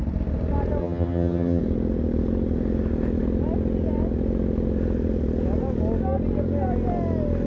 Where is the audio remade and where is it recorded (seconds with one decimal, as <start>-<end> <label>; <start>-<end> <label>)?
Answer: 0.0-0.8 recorded; 0.8-1.6 remade; 1.6-7.5 recorded